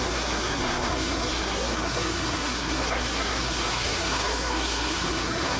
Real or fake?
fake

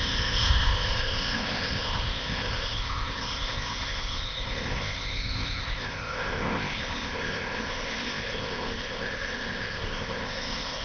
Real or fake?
fake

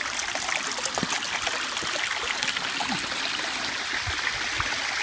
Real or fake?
real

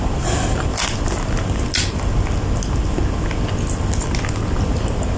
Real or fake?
real